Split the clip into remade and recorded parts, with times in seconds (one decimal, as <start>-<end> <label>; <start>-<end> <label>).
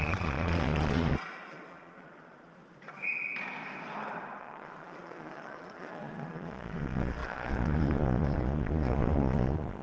0.0-2.6 remade; 2.6-4.4 recorded; 4.4-9.8 remade